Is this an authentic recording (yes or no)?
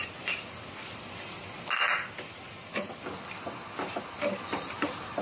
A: yes